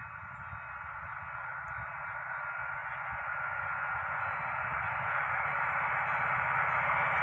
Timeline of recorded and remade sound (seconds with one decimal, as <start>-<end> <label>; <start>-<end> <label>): 0.0-2.8 recorded; 2.8-5.6 remade; 5.6-7.2 recorded